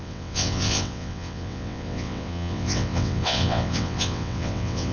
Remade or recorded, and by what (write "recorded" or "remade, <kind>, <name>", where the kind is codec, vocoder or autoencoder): remade, vocoder, WaveNeXt